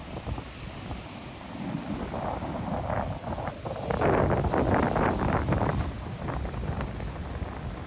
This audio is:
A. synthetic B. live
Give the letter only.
B